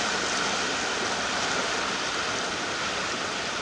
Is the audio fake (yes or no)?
no